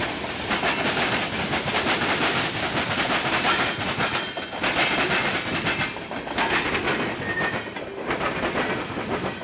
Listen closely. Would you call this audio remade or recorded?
recorded